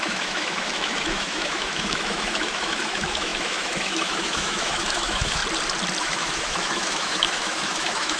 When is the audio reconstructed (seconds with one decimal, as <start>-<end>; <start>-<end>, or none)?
0.0-5.4; 6.0-8.2